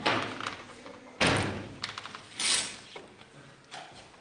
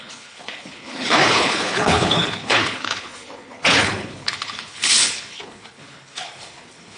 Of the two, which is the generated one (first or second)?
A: second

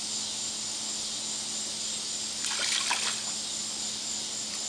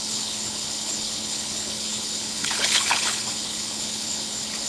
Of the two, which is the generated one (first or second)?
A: second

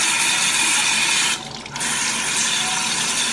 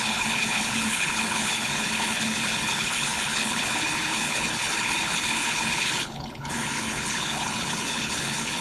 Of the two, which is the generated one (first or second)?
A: second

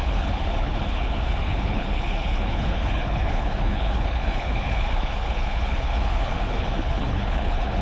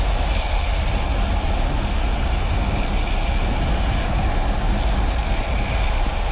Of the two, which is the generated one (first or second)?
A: first